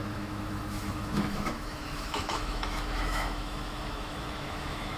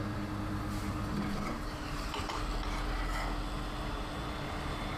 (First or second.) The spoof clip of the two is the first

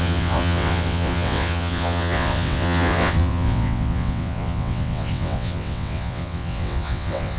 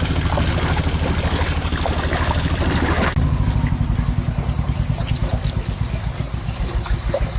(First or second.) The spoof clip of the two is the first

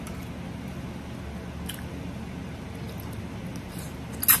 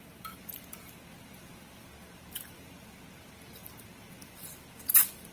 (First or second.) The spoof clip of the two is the second